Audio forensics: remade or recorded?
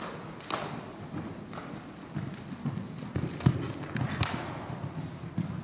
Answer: recorded